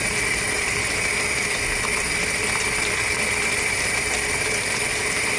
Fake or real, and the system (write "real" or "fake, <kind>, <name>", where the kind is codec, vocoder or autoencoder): real